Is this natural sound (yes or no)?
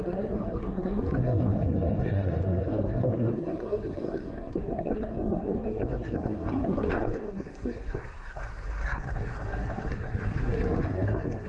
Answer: no